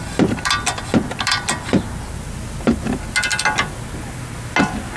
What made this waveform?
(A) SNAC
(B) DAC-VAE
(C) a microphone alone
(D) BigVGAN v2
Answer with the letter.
C